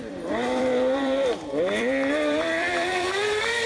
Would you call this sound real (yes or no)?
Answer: no